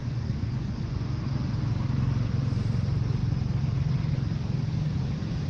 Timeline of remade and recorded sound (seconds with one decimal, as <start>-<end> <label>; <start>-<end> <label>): 0.0-1.1 remade; 1.1-5.5 recorded